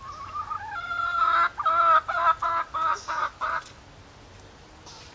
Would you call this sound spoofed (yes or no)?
no